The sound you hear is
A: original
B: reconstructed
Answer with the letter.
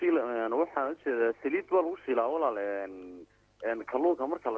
A